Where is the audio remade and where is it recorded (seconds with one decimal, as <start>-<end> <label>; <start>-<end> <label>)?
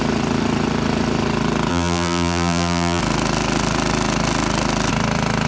0.0-1.7 recorded; 1.7-3.0 remade; 3.0-5.5 recorded